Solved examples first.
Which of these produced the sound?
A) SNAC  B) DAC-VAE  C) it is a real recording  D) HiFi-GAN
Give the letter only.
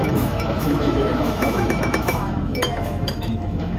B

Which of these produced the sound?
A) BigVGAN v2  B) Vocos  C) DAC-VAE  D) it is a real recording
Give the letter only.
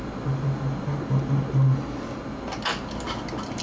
D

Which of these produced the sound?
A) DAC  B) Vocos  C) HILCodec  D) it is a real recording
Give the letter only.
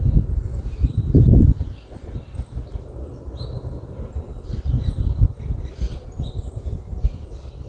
D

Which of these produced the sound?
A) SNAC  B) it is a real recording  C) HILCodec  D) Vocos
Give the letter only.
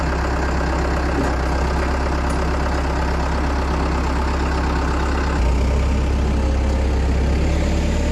B